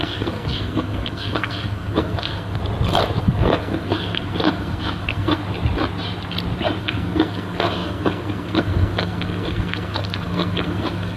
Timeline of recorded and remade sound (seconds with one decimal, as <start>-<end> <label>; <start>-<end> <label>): 0.0-2.6 remade; 2.6-3.2 recorded; 3.2-5.4 remade; 5.4-6.8 recorded; 6.8-11.2 remade